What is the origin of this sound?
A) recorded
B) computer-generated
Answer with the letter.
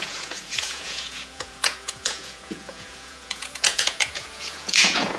B